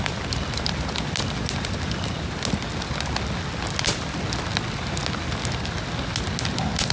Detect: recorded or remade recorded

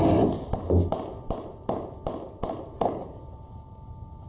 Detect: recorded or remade recorded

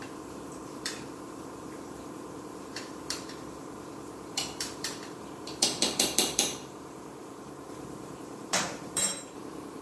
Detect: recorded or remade remade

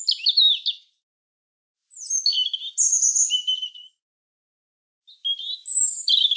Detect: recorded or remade recorded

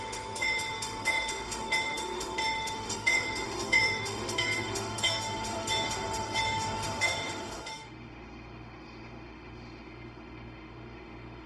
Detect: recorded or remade remade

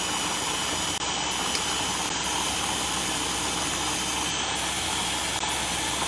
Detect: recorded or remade recorded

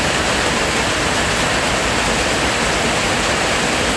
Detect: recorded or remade remade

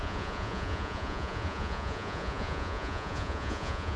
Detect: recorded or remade remade